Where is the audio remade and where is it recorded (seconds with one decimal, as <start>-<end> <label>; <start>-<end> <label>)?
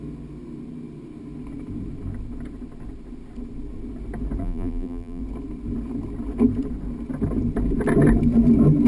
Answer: 0.0-4.4 recorded; 4.4-5.2 remade; 5.2-8.9 recorded